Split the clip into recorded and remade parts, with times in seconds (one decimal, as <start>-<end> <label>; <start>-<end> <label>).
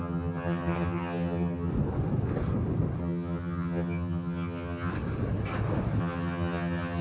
0.0-1.7 remade; 1.7-3.0 recorded; 3.0-4.9 remade; 4.9-6.0 recorded; 6.0-7.0 remade